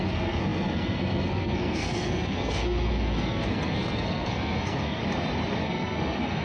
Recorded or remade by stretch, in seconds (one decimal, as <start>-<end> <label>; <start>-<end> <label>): 0.0-5.0 remade; 5.0-5.6 recorded; 5.6-6.4 remade